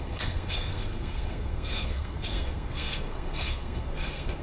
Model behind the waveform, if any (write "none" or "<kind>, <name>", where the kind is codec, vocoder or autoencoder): codec, SNAC